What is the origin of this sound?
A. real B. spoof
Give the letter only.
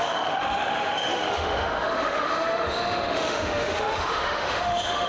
B